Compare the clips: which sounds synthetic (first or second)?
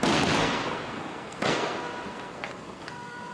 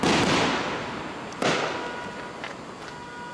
first